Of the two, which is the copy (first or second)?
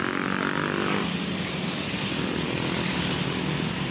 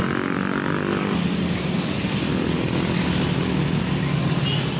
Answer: first